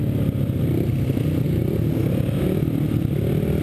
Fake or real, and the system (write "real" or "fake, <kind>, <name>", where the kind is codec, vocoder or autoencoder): real